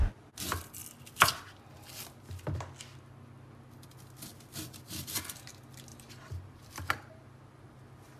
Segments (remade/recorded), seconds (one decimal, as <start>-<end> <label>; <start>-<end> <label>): 0.0-5.9 recorded; 5.9-6.9 remade; 6.9-8.2 recorded